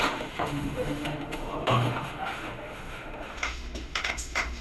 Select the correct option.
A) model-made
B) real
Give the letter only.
A